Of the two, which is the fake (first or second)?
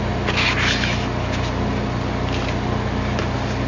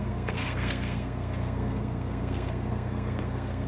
second